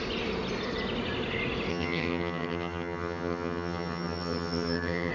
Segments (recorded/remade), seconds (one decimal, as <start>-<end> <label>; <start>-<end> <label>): 0.0-1.7 recorded; 1.7-5.1 remade